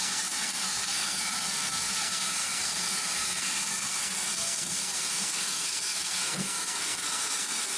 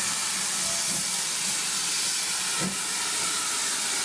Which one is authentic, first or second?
second